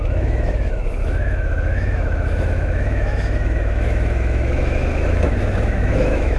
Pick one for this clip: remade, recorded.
remade